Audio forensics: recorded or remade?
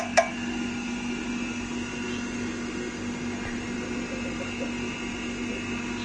recorded